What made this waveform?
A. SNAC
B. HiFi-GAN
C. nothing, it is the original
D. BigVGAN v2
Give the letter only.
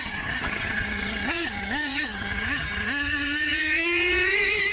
B